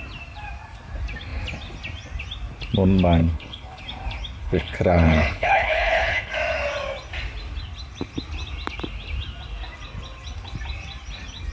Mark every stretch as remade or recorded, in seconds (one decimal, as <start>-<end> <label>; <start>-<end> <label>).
0.0-3.2 recorded; 3.2-3.8 remade; 3.8-4.4 recorded; 4.4-6.3 remade; 6.3-11.5 recorded